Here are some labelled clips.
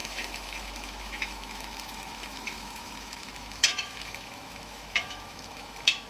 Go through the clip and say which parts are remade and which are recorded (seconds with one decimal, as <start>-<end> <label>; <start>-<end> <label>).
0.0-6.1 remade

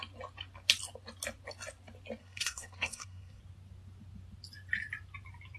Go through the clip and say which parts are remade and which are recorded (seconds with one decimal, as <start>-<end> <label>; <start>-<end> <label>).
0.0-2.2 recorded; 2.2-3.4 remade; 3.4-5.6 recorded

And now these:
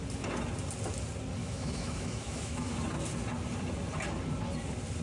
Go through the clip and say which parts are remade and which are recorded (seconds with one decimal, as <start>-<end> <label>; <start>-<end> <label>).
0.0-1.4 recorded; 1.4-2.8 remade; 2.8-5.0 recorded